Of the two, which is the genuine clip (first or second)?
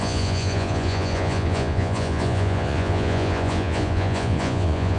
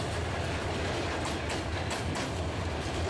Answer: second